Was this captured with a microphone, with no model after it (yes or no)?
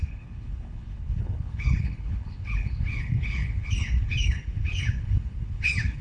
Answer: no